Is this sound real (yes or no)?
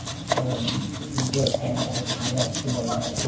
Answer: yes